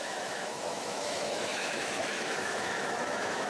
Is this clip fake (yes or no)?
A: yes